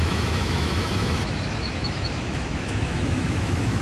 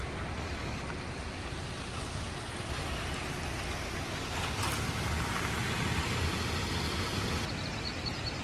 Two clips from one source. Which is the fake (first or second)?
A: first